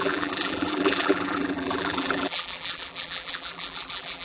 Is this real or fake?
fake